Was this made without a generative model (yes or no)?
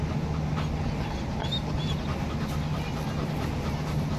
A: yes